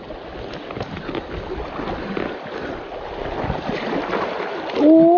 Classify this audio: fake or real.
real